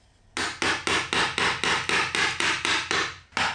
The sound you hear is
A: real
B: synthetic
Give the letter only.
A